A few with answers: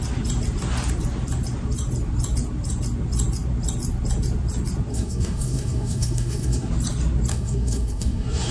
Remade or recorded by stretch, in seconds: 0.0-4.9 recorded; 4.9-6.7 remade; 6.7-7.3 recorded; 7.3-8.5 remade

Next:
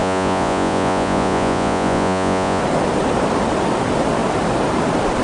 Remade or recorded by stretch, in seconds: 0.0-2.6 remade; 2.6-5.2 recorded